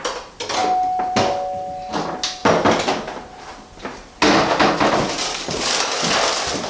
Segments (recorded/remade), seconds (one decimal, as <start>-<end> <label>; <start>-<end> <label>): 0.0-5.3 recorded; 5.3-6.1 remade; 6.1-6.7 recorded